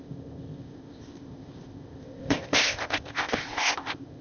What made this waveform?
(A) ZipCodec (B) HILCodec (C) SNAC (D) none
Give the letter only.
A